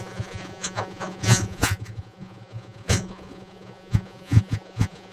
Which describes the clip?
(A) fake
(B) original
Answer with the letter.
A